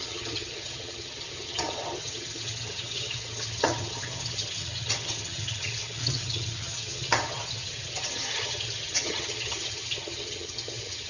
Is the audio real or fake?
fake